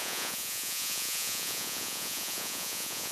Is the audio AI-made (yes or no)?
yes